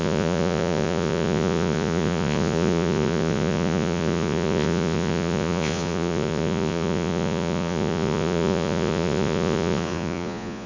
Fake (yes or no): yes